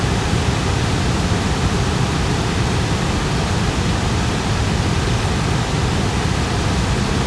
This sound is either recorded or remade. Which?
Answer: recorded